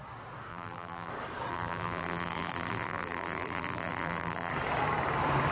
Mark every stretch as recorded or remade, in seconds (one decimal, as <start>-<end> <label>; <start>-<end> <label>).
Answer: 0.0-0.5 recorded; 0.5-1.1 remade; 1.1-1.5 recorded; 1.5-4.5 remade; 4.5-5.5 recorded